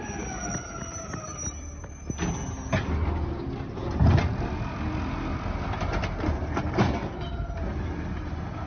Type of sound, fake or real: real